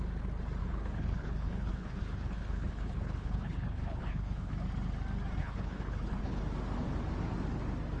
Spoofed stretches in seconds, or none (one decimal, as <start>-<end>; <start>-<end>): 0.6-4.5; 5.4-6.4